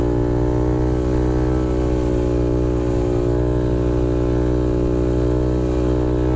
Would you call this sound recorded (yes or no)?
yes